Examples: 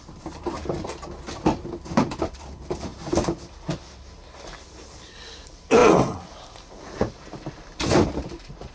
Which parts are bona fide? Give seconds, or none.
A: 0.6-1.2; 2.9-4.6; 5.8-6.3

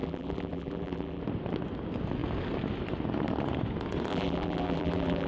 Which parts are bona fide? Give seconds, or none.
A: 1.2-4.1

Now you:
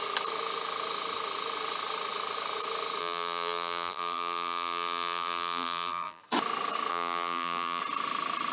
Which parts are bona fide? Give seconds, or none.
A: 0.0-3.0; 6.2-6.9; 7.8-8.5

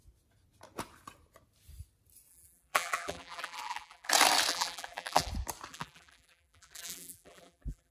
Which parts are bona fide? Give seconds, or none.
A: 0.0-2.3; 4.1-4.5; 5.3-5.7

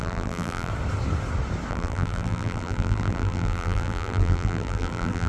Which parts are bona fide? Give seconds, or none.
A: 0.7-1.7

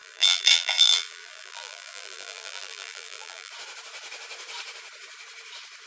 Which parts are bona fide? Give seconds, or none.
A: 3.5-5.9